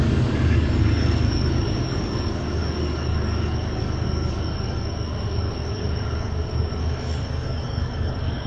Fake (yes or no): yes